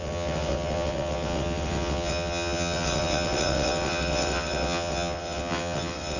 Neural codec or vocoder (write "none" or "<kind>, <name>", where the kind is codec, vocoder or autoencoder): vocoder, WaveNeXt